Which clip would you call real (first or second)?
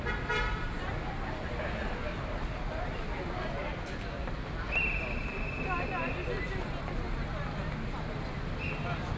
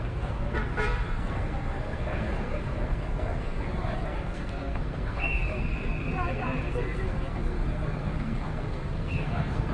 first